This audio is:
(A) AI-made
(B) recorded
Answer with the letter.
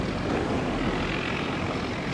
B